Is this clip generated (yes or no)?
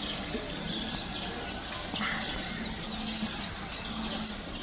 no